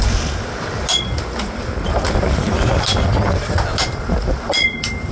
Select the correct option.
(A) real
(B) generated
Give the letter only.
A